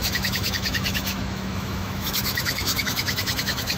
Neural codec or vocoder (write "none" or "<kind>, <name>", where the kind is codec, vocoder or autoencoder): autoencoder, DAC-VAE